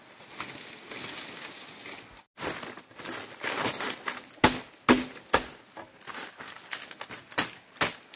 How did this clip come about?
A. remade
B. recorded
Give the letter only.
B